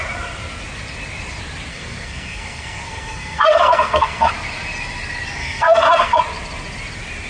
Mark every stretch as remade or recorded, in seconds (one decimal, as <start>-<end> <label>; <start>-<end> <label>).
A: 0.0-1.7 recorded; 1.7-4.3 remade; 4.3-5.4 recorded; 5.4-6.2 remade; 6.2-7.3 recorded